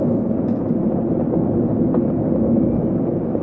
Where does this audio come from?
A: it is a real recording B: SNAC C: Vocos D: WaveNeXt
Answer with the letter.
A